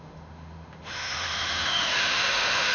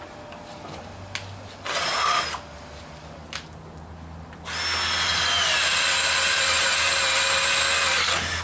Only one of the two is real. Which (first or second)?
second